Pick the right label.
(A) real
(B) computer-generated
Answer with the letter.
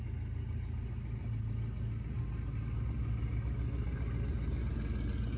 A